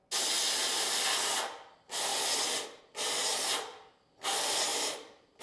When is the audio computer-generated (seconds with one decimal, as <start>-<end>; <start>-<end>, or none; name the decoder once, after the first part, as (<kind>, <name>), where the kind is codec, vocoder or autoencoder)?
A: 4.7-5.4 (vocoder, BigVGAN v2)